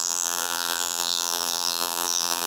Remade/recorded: remade